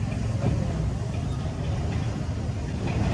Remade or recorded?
recorded